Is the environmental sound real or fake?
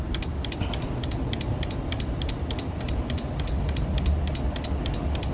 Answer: real